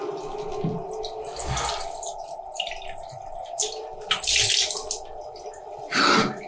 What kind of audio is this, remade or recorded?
recorded